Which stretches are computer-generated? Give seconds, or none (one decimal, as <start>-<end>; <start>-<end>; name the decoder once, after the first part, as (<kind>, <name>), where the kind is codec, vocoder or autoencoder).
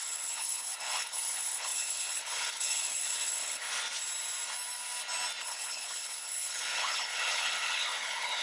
0.0-3.7 (codec, HILCodec); 5.4-8.4